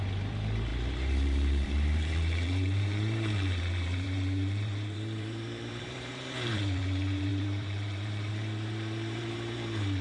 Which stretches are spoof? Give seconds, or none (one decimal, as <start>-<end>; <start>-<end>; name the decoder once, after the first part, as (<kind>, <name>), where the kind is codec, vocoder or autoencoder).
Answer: 0.0-10.0 (vocoder, BigVGAN v2)